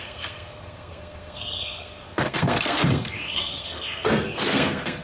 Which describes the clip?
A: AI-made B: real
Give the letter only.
A